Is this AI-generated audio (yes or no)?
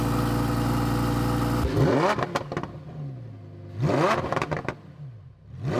no